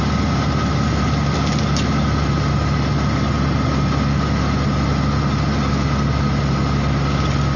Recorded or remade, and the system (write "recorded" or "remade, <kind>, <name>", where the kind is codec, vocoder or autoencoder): recorded